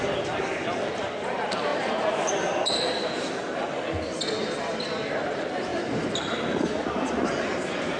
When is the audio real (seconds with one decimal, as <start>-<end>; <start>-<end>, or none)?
0.0-8.0